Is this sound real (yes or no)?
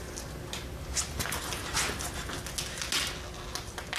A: yes